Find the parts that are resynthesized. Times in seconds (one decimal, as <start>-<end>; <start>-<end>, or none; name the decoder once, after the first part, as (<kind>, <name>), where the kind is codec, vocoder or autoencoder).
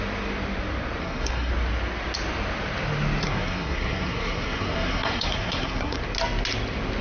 1.0-1.5 (codec, SNAC); 3.2-6.0